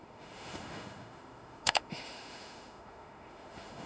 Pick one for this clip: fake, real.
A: fake